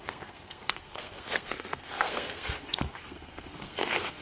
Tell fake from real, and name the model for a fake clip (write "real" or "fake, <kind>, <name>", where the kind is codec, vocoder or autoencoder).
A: fake, codec, SNAC